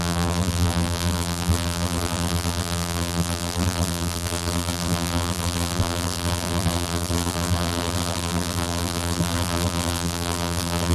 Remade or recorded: remade